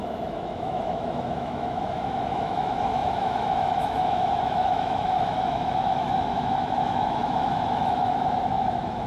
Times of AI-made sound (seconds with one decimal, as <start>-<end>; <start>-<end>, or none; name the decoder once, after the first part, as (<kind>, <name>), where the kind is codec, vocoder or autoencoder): 0.0-9.1 (autoencoder, DAC-VAE)